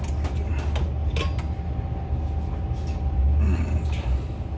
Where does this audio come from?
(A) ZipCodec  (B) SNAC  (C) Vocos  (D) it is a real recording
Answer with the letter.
D